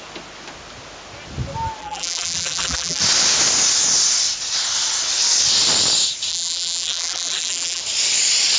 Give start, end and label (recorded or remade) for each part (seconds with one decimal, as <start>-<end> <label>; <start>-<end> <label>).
0.0-1.8 recorded; 1.8-3.0 remade; 3.0-6.3 recorded; 6.3-7.8 remade; 7.8-8.6 recorded